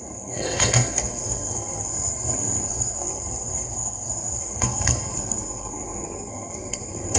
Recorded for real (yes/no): no